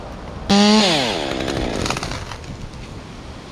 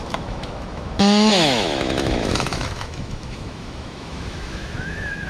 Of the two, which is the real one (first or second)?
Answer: first